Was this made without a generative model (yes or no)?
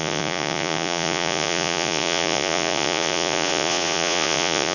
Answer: no